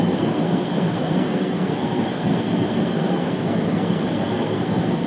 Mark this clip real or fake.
fake